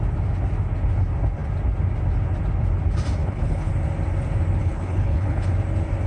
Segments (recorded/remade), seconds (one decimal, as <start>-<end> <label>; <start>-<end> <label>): 0.0-3.2 recorded; 3.2-3.7 remade; 3.7-4.6 recorded; 4.6-5.5 remade; 5.5-6.1 recorded